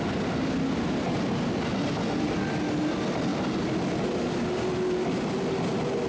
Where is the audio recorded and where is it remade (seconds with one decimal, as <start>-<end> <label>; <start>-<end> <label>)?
0.0-6.1 recorded

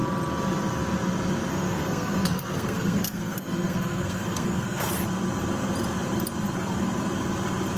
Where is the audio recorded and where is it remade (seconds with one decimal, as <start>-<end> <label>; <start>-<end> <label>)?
0.0-1.5 recorded; 1.5-4.9 remade; 4.9-7.8 recorded

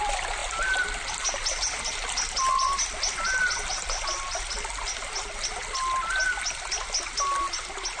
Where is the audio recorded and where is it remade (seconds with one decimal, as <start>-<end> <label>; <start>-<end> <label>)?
0.0-8.0 recorded

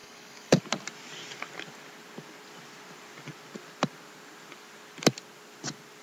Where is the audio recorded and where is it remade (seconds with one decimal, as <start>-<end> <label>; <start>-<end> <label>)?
0.0-0.6 remade; 0.6-6.0 recorded

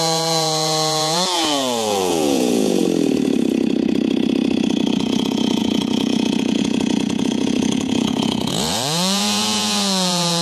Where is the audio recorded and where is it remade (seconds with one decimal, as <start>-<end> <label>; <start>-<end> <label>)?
0.0-2.8 remade; 2.8-4.9 recorded; 4.9-10.4 remade